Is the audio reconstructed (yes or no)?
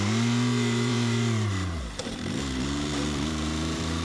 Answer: yes